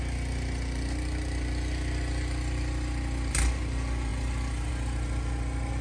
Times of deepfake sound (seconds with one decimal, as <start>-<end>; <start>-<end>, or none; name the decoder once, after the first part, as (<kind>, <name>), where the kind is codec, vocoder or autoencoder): none